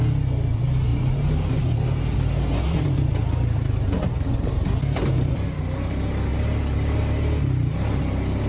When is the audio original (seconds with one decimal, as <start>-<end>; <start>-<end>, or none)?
0.0-8.5